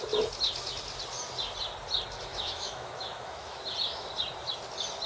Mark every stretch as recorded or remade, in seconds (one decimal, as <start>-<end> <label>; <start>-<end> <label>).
0.0-2.3 recorded; 2.3-3.6 remade; 3.6-5.1 recorded